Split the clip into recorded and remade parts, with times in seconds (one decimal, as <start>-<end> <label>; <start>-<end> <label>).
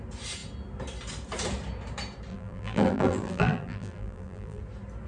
0.0-2.3 recorded; 2.3-4.6 remade; 4.6-5.1 recorded